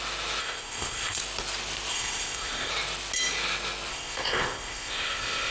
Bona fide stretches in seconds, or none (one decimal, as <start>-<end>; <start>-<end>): 0.0-0.4; 1.2-1.9; 2.7-3.9